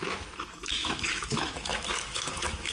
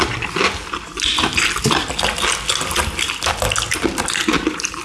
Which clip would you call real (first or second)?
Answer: second